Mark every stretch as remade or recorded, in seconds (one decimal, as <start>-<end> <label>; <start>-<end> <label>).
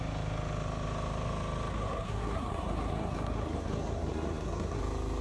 0.0-1.7 recorded; 1.7-4.8 remade; 4.8-5.2 recorded